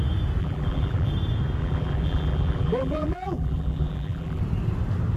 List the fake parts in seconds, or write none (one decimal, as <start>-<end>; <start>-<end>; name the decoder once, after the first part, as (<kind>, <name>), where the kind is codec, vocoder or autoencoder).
0.4-1.1 (vocoder, BigVGAN v2); 1.6-4.4